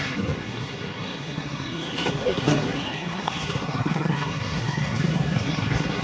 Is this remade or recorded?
remade